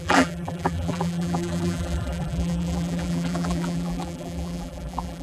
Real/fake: fake